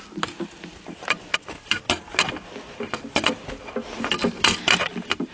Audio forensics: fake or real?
real